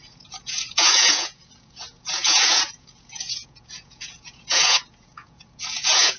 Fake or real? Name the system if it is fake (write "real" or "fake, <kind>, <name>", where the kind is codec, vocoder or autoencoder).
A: fake, vocoder, Vocos